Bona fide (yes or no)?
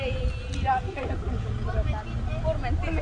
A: yes